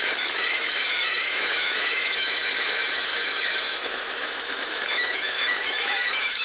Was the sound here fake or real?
fake